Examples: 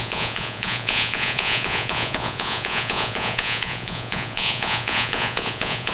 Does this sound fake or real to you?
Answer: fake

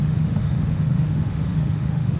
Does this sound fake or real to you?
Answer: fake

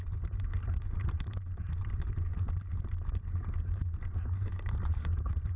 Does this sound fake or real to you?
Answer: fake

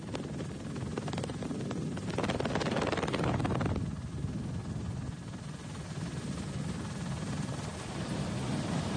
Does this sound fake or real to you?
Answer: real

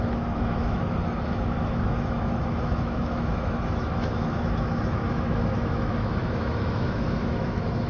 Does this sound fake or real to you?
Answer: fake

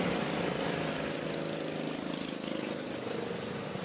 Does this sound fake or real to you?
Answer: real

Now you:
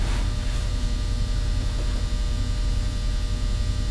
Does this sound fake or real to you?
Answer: real